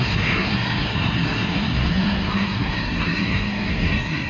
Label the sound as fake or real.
fake